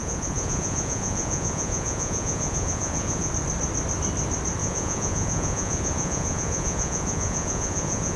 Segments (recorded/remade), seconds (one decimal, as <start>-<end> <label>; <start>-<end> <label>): 0.0-3.3 remade; 3.3-4.6 recorded; 4.6-8.2 remade